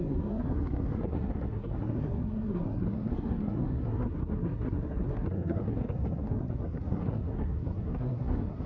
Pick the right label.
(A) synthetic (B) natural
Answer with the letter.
A